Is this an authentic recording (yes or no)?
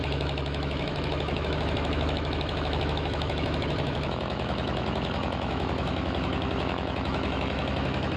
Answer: no